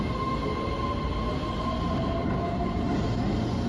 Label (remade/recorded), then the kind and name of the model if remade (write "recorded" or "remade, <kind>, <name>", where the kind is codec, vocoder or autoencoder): recorded